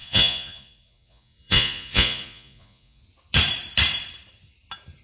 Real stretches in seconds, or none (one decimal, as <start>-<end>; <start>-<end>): 3.0-5.0